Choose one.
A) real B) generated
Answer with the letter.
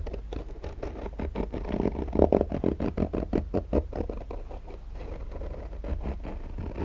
A